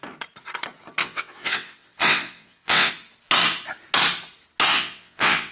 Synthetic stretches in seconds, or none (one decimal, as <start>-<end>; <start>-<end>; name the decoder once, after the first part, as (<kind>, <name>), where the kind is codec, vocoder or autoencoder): 1.0-2.9 (vocoder, WaveNeXt); 4.7-5.5